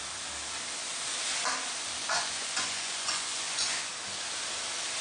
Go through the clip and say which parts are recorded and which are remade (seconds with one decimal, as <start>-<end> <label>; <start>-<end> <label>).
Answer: 0.0-2.0 recorded; 2.0-3.9 remade; 3.9-5.0 recorded